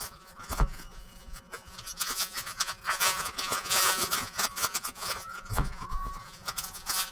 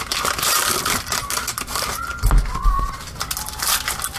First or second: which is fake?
first